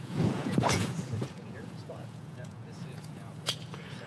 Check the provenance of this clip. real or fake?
fake